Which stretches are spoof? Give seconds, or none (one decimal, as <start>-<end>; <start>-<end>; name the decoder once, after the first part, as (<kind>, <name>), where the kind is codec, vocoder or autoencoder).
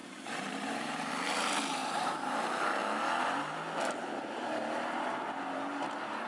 0.0-1.1 (vocoder, BigVGAN v2); 1.8-2.4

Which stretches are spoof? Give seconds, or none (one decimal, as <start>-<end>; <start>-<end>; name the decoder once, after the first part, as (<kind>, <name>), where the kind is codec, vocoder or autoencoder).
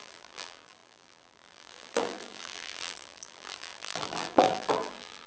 0.0-5.3 (vocoder, BigVGAN v2)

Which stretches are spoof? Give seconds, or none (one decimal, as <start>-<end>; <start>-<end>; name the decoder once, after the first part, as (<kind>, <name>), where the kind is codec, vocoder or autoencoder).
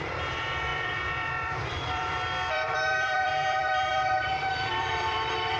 0.0-5.6 (vocoder, BigVGAN v2)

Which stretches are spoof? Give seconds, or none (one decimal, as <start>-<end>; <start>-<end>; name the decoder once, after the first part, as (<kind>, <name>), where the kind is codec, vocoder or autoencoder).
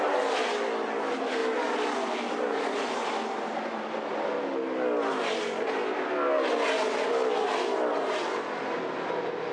none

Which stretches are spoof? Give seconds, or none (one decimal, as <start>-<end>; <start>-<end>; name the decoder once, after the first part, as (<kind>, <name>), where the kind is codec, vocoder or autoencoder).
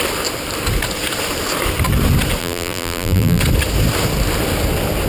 2.4-3.4 (vocoder, BigVGAN v2)